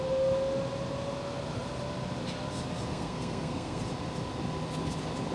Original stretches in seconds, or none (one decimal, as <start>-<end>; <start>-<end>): 0.0-2.9; 3.8-5.3